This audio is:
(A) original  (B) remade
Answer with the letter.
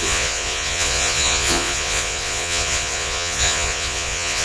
B